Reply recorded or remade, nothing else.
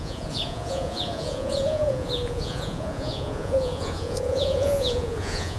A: remade